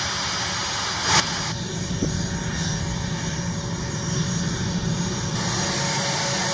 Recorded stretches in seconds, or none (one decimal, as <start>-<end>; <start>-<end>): 0.0-6.5